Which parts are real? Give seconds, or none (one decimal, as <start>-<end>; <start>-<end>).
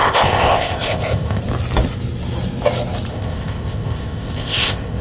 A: 1.4-3.1